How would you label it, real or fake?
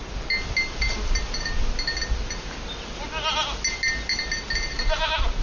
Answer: real